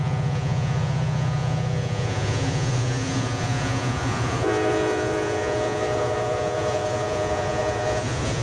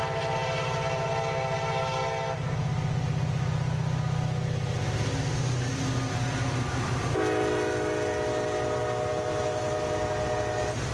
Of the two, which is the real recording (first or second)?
second